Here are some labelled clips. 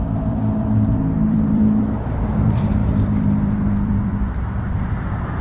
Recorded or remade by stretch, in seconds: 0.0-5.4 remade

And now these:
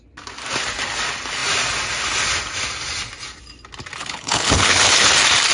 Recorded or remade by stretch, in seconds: 0.0-4.0 recorded; 4.0-5.1 remade; 5.1-5.5 recorded

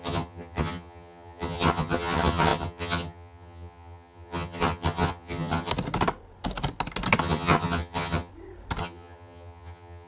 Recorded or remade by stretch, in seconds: 0.0-5.7 remade; 5.7-7.2 recorded; 7.2-8.3 remade; 8.3-8.8 recorded; 8.8-10.1 remade